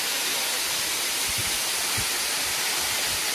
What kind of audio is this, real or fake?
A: real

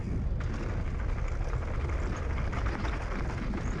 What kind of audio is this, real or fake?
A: real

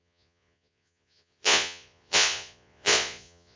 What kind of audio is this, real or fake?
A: fake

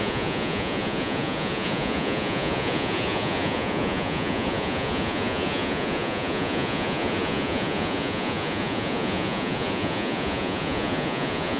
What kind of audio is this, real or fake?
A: fake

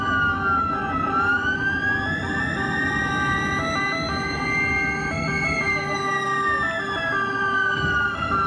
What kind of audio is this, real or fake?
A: real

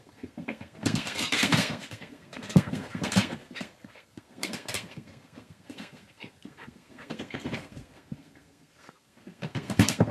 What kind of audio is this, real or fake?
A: fake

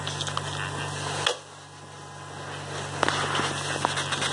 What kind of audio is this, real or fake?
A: real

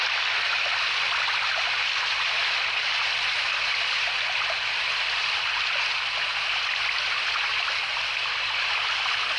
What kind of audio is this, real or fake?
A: real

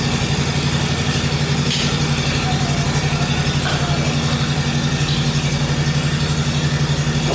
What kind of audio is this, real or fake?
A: real